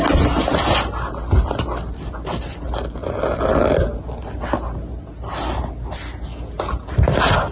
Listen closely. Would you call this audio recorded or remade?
recorded